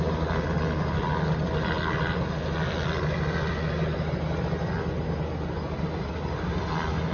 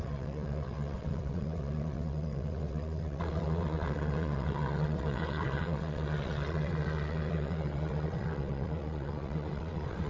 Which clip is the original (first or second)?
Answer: first